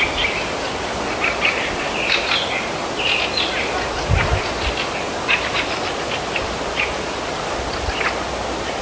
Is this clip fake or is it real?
real